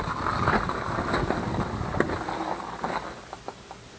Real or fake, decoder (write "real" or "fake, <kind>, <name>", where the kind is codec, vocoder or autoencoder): real